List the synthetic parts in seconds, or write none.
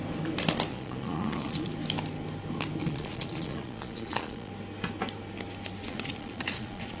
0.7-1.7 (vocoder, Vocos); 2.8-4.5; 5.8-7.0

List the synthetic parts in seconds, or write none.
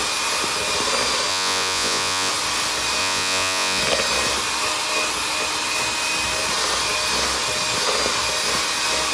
1.3-2.3 (vocoder, Vocos); 3.0-3.8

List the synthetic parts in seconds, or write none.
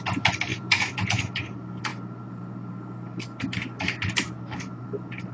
0.5-1.2 (vocoder, Vocos)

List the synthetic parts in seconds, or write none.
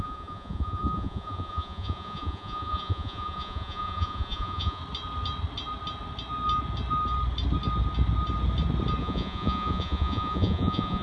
0.0-4.8 (vocoder, Vocos); 9.0-11.0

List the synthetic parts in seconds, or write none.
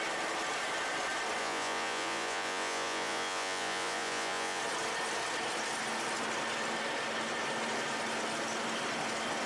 1.4-4.6 (vocoder, Vocos)